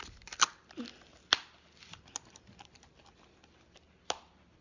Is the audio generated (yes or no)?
no